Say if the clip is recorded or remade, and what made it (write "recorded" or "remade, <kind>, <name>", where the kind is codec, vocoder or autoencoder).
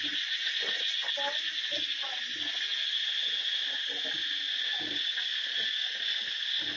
recorded